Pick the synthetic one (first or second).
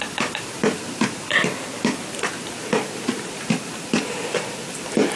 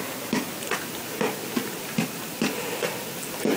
first